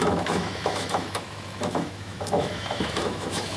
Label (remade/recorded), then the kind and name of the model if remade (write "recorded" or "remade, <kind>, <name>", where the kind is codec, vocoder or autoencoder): remade, autoencoder, DAC-VAE